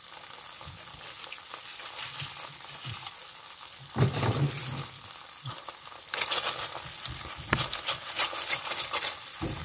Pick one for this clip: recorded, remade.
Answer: recorded